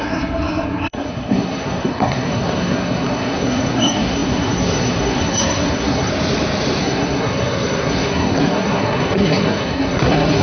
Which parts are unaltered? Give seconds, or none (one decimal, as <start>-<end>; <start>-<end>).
6.1-6.8